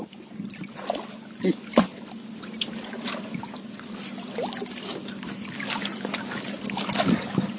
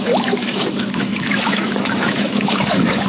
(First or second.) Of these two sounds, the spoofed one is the second